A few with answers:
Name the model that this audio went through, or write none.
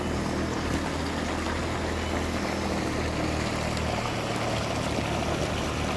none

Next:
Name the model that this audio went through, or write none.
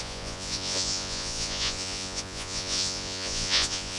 vocoder, Vocos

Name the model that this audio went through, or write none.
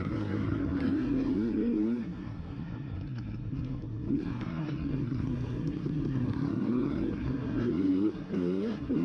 codec, SNAC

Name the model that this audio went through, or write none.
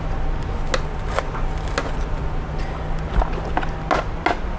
none